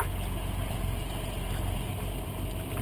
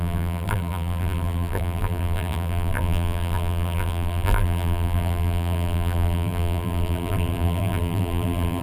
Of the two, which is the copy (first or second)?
second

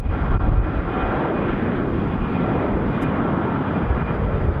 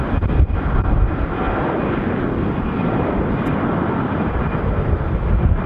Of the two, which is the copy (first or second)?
second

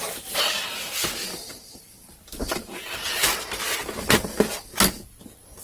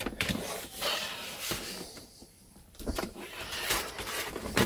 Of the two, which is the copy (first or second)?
second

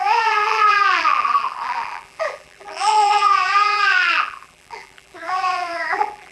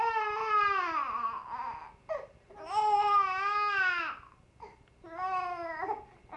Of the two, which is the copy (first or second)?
first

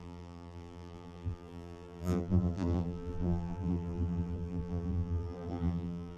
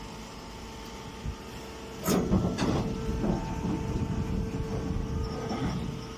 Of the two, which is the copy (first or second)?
first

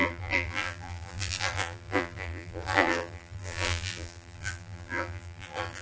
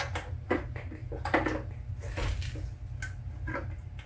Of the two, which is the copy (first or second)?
first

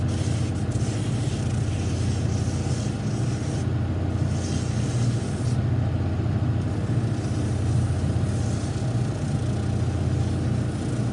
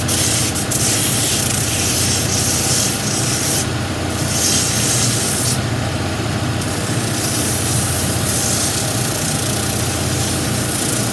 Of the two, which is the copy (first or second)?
second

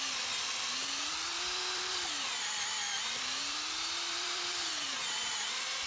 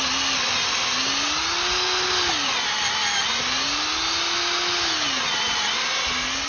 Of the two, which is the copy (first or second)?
first